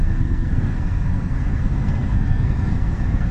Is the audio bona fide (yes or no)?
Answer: no